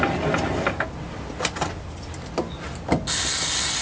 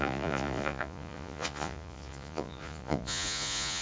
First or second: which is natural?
first